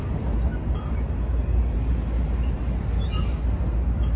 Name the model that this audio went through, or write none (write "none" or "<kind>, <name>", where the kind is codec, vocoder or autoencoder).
none